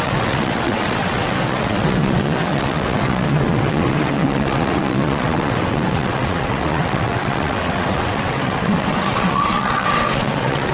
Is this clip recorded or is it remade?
remade